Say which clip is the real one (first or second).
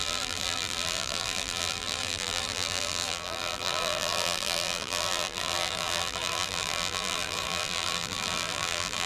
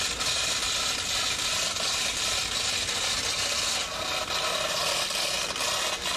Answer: second